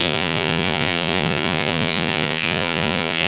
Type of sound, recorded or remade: remade